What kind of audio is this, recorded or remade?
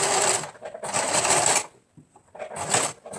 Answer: recorded